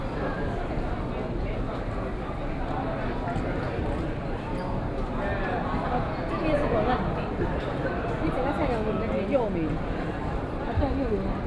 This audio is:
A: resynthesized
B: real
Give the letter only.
B